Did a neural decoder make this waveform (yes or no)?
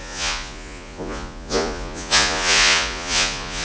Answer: yes